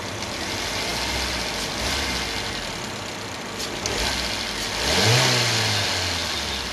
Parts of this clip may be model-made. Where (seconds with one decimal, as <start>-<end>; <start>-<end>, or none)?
none